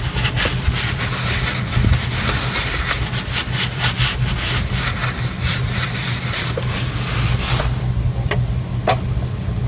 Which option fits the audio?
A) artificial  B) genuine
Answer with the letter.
B